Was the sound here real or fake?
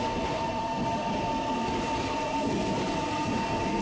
fake